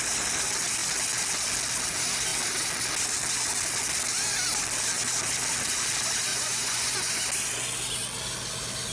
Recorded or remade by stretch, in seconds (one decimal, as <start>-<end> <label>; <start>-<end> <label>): 0.0-6.3 recorded; 6.3-7.1 remade; 7.1-8.9 recorded